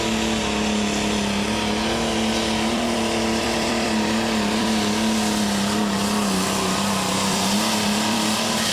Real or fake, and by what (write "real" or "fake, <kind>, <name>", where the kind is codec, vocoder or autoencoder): fake, vocoder, BigVGAN v2